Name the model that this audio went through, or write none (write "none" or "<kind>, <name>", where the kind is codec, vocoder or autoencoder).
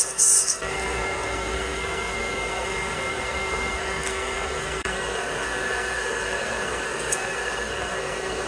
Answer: codec, SNAC